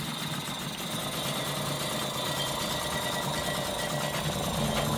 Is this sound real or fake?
real